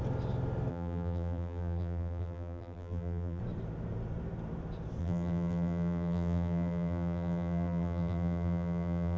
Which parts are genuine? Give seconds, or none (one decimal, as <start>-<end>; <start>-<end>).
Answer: 0.0-0.7; 3.4-5.0